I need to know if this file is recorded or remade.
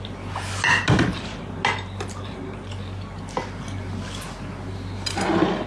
recorded